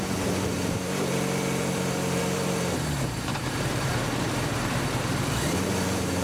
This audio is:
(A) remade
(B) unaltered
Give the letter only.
A